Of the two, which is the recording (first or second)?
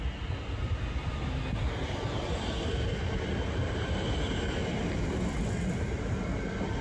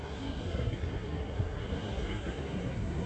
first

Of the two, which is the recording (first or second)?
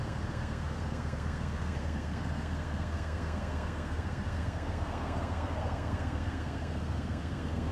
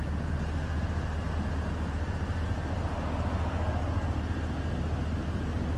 second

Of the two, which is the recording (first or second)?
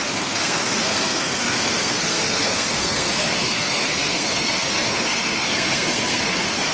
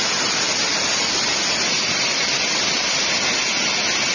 second